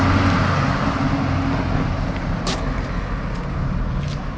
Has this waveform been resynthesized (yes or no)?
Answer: no